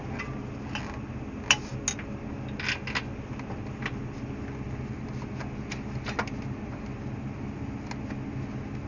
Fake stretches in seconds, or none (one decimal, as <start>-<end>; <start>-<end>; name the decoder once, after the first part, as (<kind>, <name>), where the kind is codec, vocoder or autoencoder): none